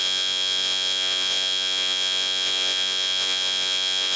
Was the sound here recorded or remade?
remade